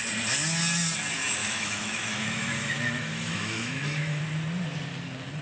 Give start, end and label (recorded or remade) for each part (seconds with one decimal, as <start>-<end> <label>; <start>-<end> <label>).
0.0-1.4 recorded; 1.4-4.2 remade; 4.2-5.4 recorded